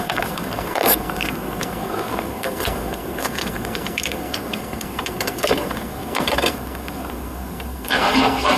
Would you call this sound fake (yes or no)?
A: yes